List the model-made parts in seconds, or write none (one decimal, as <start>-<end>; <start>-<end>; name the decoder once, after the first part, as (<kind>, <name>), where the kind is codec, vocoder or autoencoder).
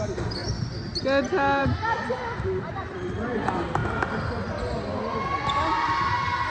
none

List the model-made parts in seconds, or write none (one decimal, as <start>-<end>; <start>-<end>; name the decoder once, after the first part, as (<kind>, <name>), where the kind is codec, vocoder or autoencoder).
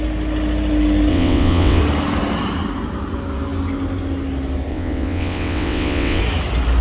1.1-1.8 (vocoder, WaveNeXt); 4.7-6.2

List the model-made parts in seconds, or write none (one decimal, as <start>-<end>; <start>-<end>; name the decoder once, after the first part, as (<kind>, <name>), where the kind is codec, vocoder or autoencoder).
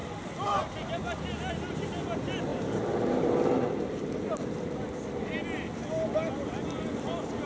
none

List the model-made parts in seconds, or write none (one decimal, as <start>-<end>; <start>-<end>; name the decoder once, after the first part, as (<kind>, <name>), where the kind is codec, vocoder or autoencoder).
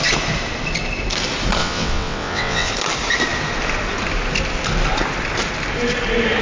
1.6-2.7 (vocoder, WaveNeXt)